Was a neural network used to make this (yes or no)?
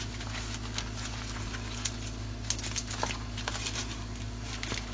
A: no